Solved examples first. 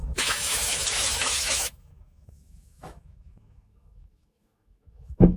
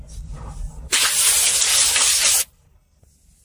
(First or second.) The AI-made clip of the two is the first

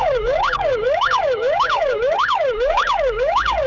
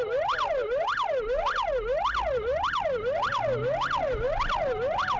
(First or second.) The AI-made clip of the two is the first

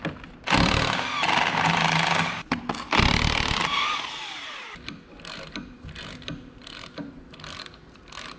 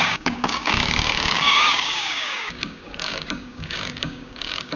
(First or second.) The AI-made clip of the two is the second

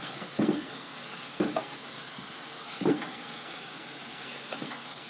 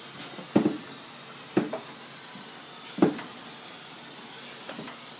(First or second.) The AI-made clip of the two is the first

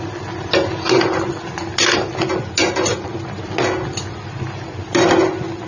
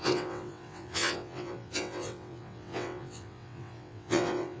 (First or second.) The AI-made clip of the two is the second